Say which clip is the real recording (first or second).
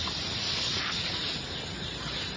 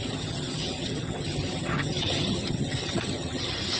first